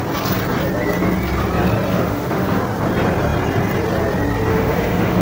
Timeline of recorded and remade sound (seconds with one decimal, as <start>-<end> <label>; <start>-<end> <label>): 0.0-1.9 recorded; 1.9-2.6 remade; 2.6-4.5 recorded; 4.5-5.2 remade